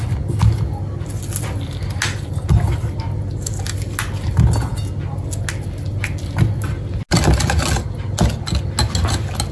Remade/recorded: recorded